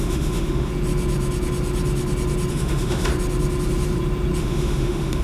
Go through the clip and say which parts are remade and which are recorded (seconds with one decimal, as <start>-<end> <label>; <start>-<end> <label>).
0.0-0.7 remade; 0.7-2.5 recorded; 2.5-3.1 remade; 3.1-4.4 recorded; 4.4-5.2 remade